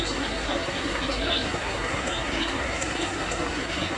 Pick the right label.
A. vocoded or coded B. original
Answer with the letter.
A